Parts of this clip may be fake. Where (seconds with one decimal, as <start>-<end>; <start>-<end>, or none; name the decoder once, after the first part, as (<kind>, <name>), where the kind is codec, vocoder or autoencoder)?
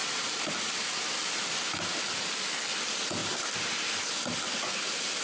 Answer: 0.0-0.5 (vocoder, BigVGAN v2); 3.2-4.0